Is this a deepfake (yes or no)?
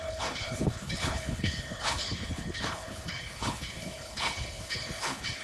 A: yes